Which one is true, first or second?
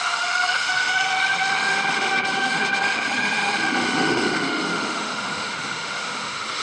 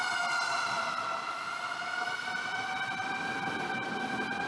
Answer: second